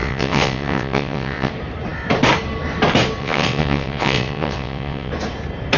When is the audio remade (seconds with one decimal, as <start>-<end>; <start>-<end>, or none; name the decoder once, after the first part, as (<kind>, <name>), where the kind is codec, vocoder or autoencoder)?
0.0-1.5 (vocoder, WaveNeXt); 3.2-5.1